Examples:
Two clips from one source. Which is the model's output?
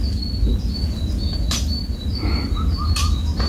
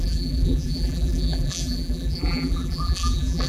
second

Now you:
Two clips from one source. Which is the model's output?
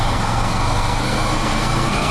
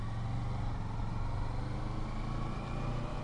first